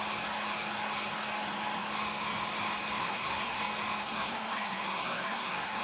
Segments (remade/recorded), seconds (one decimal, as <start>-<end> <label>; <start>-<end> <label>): 0.0-3.0 recorded; 3.0-3.6 remade; 3.6-4.0 recorded; 4.0-5.8 remade